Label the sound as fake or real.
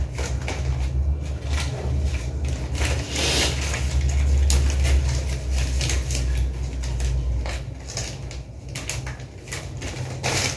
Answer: real